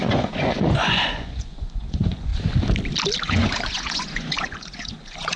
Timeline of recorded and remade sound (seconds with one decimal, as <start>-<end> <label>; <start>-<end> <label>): 0.0-2.3 remade; 2.3-3.2 recorded; 3.2-5.4 remade